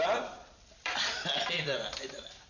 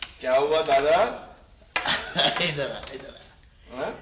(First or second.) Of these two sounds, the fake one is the first